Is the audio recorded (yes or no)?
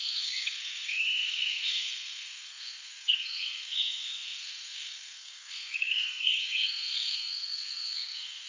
no